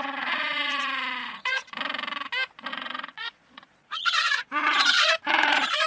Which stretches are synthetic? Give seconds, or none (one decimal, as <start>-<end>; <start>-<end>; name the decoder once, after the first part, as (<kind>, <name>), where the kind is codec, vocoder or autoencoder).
0.0-1.6 (vocoder, Vocos); 2.7-5.9